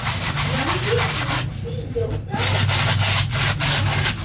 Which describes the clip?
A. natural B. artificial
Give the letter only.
A